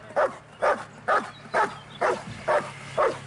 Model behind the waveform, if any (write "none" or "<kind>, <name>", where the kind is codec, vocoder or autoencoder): none